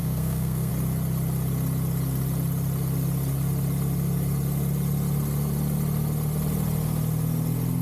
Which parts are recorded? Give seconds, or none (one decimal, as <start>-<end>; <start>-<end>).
0.7-7.8